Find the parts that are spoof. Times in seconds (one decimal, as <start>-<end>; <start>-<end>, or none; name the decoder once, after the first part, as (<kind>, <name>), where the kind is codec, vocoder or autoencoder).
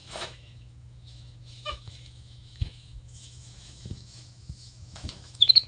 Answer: 0.0-5.7 (autoencoder, DAC-VAE)